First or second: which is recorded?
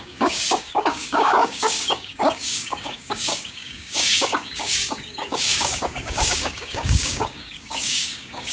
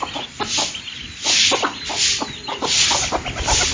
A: second